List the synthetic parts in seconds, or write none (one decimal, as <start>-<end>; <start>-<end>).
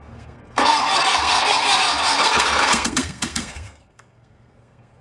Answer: 0.0-5.0